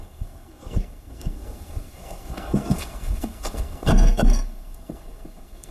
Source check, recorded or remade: remade